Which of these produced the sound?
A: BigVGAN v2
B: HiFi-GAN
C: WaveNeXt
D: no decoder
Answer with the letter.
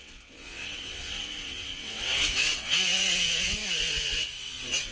C